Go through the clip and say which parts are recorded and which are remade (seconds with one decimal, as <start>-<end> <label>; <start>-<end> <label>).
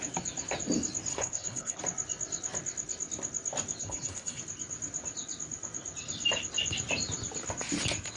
0.0-1.1 recorded; 1.1-1.8 remade; 1.8-3.8 recorded; 3.8-4.4 remade; 4.4-8.2 recorded